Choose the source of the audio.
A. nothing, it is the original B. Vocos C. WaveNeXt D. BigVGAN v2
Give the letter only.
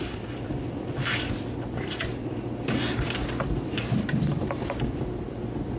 D